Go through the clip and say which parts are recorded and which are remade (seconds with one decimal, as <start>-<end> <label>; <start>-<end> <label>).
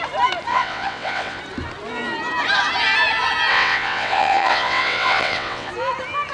0.0-0.5 recorded; 0.5-1.4 remade; 1.4-3.5 recorded; 3.5-5.7 remade; 5.7-6.3 recorded